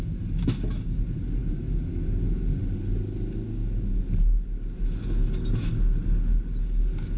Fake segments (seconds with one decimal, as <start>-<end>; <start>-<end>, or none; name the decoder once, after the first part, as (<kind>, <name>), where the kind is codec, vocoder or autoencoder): none